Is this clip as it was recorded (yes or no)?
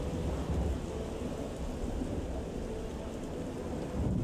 yes